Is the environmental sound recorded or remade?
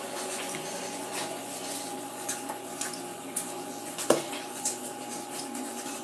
remade